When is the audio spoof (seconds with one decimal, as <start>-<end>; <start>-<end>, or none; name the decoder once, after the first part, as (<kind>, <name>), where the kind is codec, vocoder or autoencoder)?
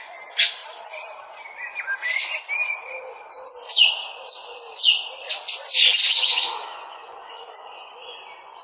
0.0-0.6 (vocoder, Vocos); 5.6-8.6